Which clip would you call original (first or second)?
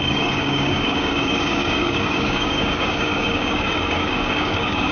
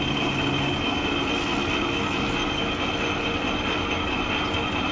second